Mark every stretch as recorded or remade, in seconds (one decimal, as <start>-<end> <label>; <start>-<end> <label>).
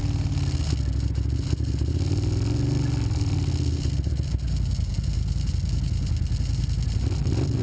0.0-7.6 recorded